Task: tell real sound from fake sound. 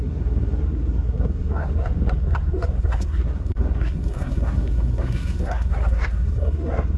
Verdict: fake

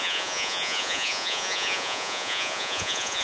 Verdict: fake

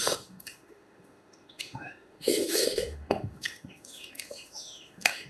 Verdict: fake